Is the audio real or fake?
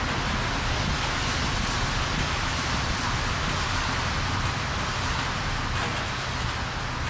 real